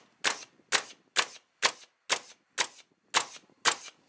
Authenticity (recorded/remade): recorded